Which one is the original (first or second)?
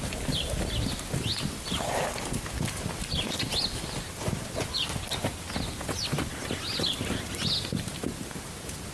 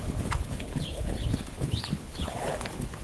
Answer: first